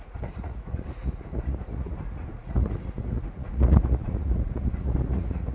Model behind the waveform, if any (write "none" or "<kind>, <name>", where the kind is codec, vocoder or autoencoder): vocoder, Vocos